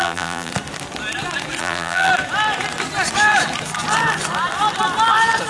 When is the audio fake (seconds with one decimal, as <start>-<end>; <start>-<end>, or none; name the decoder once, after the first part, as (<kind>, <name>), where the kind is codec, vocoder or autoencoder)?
0.0-0.5 (vocoder, BigVGAN v2); 1.6-2.1